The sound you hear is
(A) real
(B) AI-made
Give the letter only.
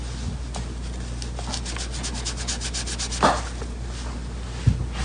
A